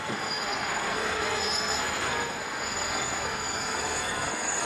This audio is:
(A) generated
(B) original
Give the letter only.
A